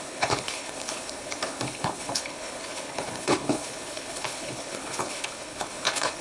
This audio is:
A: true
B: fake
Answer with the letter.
B